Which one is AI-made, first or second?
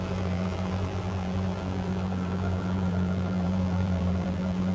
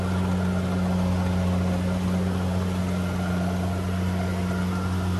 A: first